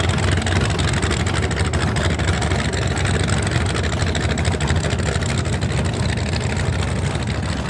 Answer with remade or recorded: recorded